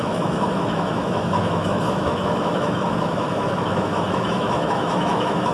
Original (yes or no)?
no